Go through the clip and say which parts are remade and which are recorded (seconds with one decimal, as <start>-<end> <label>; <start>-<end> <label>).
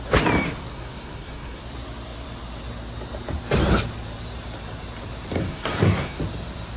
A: 0.0-0.7 recorded; 0.7-1.6 remade; 1.6-5.4 recorded; 5.4-6.2 remade; 6.2-6.8 recorded